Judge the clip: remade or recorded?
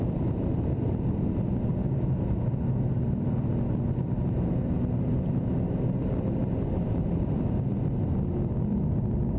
recorded